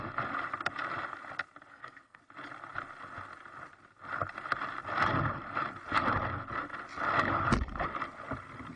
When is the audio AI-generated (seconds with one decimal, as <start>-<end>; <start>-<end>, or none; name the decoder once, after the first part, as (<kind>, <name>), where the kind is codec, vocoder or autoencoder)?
1.7-2.2 (codec, SNAC)